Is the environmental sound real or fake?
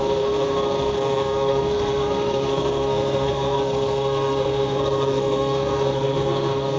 fake